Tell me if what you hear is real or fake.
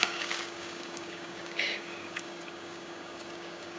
fake